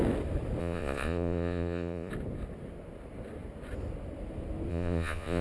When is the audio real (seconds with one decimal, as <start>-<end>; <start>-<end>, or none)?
0.0-0.6; 2.1-4.7